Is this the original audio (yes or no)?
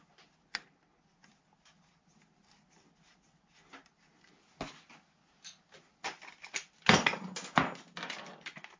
yes